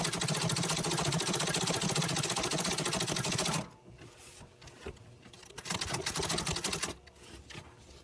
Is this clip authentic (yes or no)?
yes